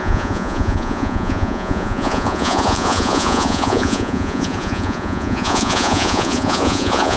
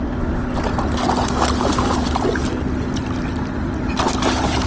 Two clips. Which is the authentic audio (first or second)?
second